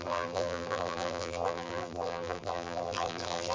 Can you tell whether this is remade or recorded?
remade